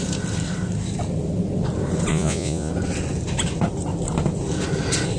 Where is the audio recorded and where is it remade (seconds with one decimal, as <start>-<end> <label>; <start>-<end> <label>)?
0.0-2.1 recorded; 2.1-2.7 remade; 2.7-5.2 recorded